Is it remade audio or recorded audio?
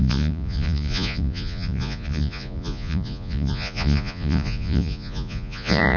remade